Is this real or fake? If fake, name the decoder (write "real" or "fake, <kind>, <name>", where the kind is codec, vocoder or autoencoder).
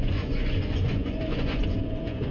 fake, vocoder, Vocos